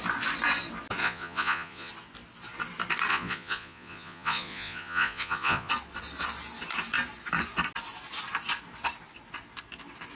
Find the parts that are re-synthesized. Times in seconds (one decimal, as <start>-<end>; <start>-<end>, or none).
1.0-1.9; 3.1-5.7